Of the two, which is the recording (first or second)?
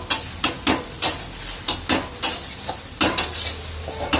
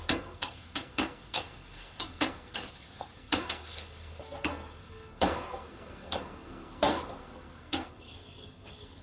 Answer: first